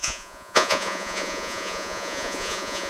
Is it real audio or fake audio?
fake